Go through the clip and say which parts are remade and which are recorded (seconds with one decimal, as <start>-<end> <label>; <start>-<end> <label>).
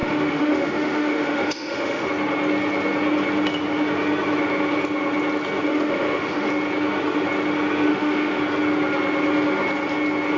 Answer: 0.0-2.1 remade; 2.1-5.7 recorded; 5.7-6.5 remade; 6.5-7.9 recorded; 7.9-8.4 remade; 8.4-10.4 recorded